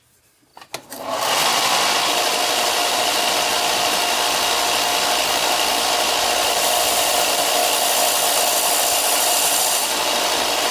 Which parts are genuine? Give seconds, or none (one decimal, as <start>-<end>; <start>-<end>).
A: 0.0-10.7